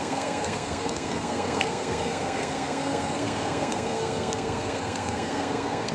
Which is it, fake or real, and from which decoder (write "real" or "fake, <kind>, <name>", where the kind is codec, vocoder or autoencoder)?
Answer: fake, codec, SNAC